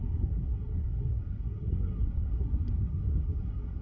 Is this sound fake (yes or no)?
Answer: yes